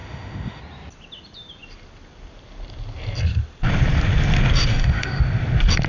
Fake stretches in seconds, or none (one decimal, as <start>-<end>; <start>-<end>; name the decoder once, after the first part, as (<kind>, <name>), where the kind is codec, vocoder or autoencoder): 0.0-0.6 (autoencoder, DAC-VAE); 4.7-5.2